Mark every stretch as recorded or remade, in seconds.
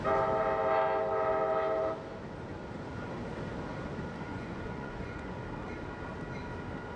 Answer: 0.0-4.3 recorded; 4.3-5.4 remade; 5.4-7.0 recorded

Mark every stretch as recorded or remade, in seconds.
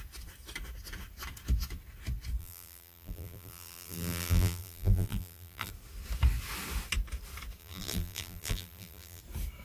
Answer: 0.0-2.4 recorded; 2.4-5.7 remade; 5.7-7.6 recorded; 7.6-9.2 remade; 9.2-9.6 recorded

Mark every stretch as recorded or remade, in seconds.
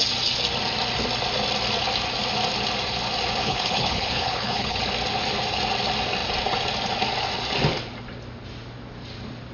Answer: 0.0-3.4 recorded; 3.4-4.8 remade; 4.8-9.5 recorded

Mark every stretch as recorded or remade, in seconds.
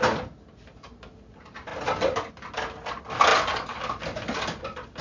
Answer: 0.0-5.0 recorded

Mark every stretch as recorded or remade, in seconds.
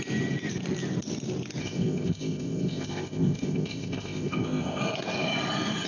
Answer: 0.0-1.6 recorded; 1.6-4.8 remade; 4.8-5.9 recorded